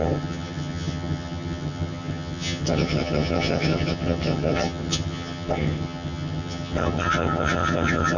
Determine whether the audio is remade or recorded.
remade